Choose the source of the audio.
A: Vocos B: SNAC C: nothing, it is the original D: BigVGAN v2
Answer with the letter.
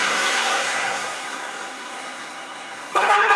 B